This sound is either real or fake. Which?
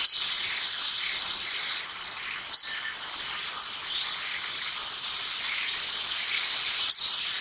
real